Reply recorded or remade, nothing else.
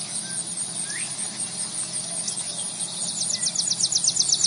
recorded